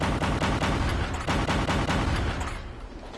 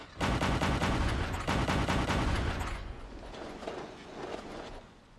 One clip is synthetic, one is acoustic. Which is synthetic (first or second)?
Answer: second